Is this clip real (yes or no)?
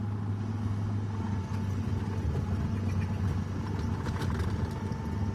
yes